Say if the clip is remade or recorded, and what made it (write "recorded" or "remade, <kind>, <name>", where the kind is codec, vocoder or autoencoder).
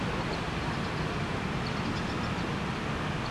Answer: recorded